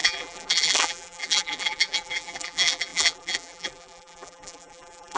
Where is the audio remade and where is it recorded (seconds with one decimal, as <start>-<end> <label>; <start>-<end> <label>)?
0.0-5.2 remade

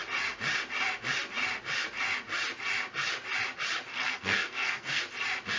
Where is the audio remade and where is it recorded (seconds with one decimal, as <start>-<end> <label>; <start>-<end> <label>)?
0.0-3.9 recorded; 3.9-5.0 remade; 5.0-5.6 recorded

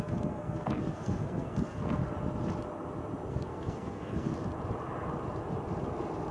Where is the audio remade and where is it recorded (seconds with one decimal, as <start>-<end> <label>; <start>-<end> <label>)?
0.0-2.0 remade; 2.0-3.3 recorded; 3.3-4.3 remade; 4.3-6.3 recorded

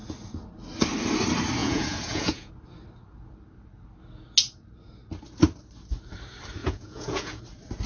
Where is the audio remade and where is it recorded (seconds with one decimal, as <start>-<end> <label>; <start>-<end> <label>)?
0.0-1.6 recorded; 1.6-2.5 remade; 2.5-6.6 recorded; 6.6-7.4 remade; 7.4-7.9 recorded

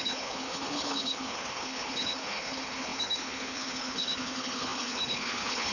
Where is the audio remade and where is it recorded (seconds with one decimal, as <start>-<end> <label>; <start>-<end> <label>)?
0.0-5.7 remade

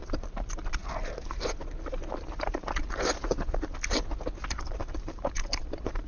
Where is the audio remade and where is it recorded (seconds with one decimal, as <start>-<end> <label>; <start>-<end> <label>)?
0.0-0.8 remade; 0.8-4.5 recorded; 4.5-6.1 remade

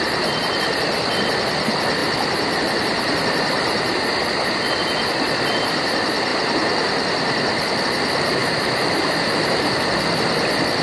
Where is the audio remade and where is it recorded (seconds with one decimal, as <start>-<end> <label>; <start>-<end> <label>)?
0.0-8.4 recorded; 8.4-9.8 remade; 9.8-10.8 recorded